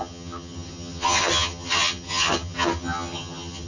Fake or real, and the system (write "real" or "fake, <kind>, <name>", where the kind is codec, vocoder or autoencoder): fake, vocoder, HiFi-GAN